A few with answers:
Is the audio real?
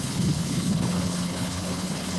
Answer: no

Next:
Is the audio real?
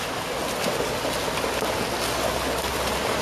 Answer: yes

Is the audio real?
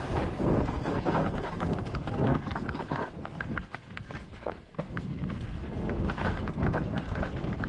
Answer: no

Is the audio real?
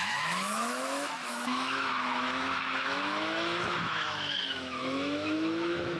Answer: no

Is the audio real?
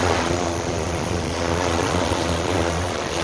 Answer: no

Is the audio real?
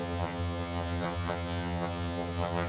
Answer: no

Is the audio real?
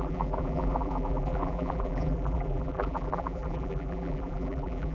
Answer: no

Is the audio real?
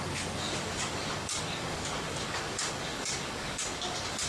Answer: no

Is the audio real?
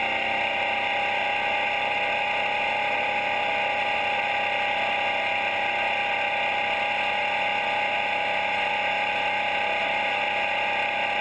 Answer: yes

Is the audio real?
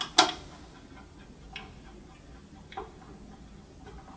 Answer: yes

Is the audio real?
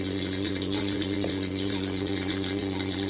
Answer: no